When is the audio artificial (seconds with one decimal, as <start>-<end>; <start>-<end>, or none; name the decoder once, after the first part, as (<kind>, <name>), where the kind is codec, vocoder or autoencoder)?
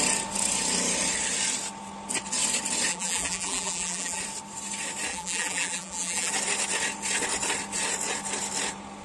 2.9-4.2 (vocoder, BigVGAN v2); 5.1-6.3